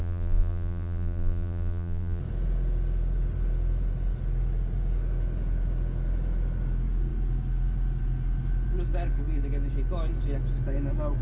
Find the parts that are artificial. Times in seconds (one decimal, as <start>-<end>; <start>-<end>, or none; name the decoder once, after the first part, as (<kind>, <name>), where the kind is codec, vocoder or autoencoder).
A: 0.0-2.2 (vocoder, BigVGAN v2)